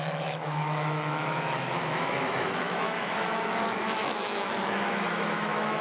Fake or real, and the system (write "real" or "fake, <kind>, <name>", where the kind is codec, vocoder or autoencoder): fake, autoencoder, DAC-VAE